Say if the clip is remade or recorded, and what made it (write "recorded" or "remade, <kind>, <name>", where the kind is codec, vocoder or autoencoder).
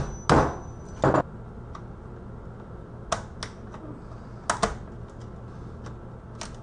recorded